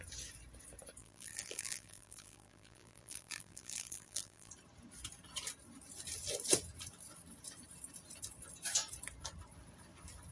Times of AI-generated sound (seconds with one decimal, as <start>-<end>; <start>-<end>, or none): 1.0-4.5